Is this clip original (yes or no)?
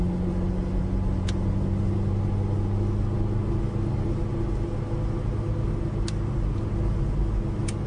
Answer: yes